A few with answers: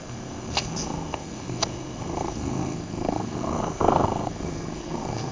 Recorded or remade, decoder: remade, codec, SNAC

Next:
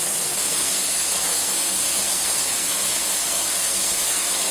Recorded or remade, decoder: remade, codec, SNAC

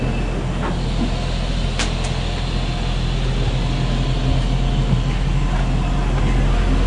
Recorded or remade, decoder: recorded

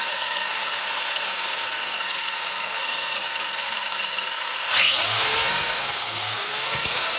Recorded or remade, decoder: remade, codec, SNAC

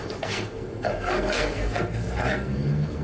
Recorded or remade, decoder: remade, codec, SNAC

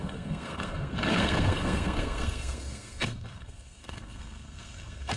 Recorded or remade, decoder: remade, codec, SNAC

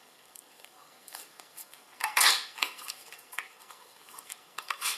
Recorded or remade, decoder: remade, codec, SNAC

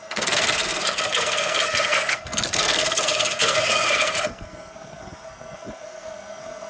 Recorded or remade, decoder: remade, codec, SNAC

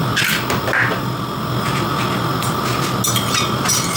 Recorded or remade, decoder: recorded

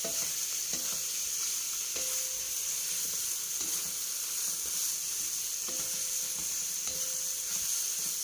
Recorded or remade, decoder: recorded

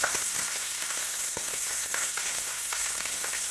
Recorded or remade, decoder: remade, codec, SNAC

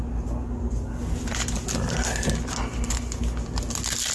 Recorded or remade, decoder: recorded